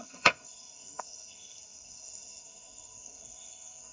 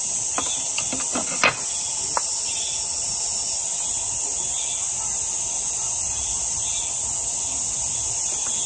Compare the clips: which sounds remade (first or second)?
first